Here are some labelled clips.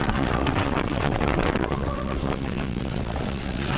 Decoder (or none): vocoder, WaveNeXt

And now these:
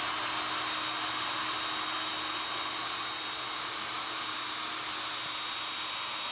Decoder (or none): none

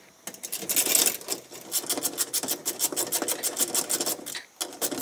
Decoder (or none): none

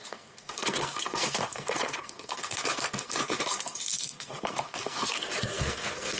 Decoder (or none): codec, SNAC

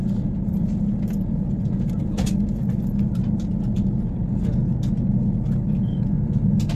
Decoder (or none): none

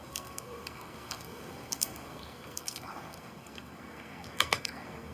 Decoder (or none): codec, SNAC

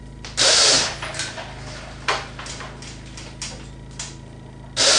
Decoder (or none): none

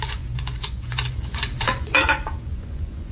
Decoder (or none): vocoder, Vocos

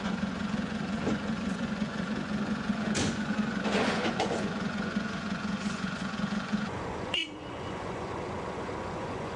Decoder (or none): vocoder, Vocos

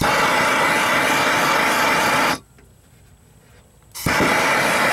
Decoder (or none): none